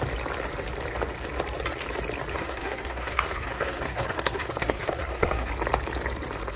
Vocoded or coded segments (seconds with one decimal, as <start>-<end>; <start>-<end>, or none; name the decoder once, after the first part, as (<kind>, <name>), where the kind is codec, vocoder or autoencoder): 2.3-5.5 (codec, SNAC)